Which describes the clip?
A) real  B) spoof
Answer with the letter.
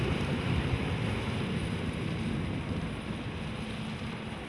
A